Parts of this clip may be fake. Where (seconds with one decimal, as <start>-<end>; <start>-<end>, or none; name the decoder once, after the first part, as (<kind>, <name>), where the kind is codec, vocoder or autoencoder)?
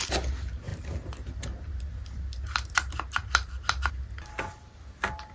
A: none